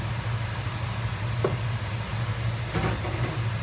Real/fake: real